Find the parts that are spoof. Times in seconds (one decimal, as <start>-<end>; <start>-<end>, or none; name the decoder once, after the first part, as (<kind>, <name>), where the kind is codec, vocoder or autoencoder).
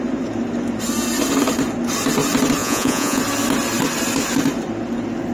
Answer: 2.6-3.2 (vocoder, Vocos)